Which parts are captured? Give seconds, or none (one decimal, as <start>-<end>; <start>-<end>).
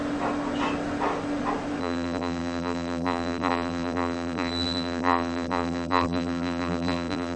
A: 0.0-1.8